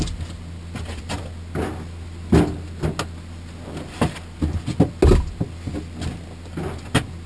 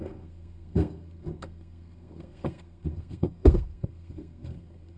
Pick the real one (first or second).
first